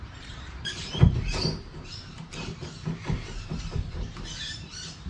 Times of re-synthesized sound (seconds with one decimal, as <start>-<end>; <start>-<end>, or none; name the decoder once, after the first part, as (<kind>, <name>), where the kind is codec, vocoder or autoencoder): 0.0-5.1 (vocoder, BigVGAN v2)